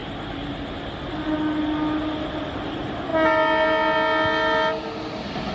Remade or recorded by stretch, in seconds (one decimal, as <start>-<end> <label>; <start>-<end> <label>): 0.0-5.5 recorded